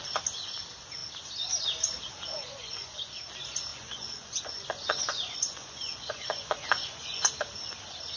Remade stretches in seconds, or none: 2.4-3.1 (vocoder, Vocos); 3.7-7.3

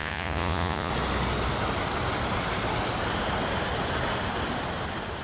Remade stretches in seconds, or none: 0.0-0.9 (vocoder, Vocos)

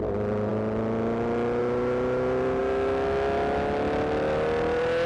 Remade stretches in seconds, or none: none

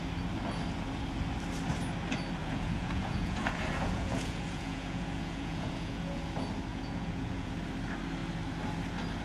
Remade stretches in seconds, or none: 2.4-6.2 (vocoder, Vocos); 6.7-7.5

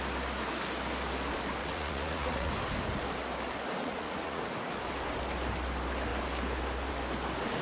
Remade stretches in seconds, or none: 1.6-2.5 (vocoder, Vocos); 3.8-4.4

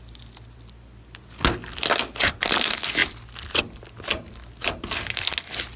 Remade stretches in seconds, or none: none

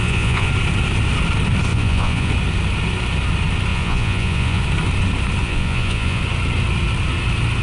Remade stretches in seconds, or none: 0.0-0.5 (vocoder, Vocos); 1.7-2.3; 3.7-4.6; 5.4-6.2